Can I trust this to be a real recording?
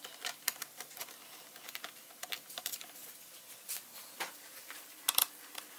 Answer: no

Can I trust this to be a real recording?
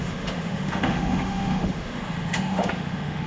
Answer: no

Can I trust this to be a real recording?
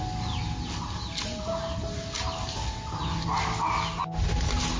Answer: yes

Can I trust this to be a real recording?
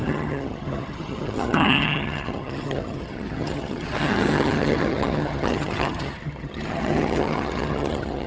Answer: no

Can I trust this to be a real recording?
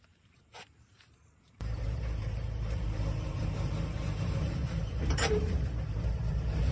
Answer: no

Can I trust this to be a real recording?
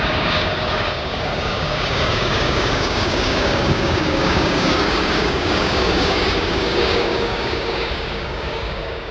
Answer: no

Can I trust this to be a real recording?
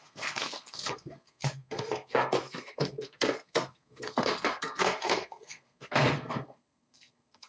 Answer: no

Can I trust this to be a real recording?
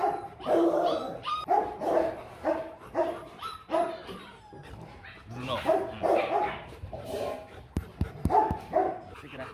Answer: no